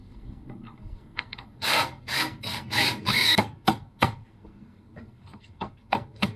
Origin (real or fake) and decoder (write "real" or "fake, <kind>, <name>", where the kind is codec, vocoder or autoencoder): fake, codec, SNAC